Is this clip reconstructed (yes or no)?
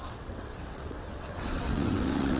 yes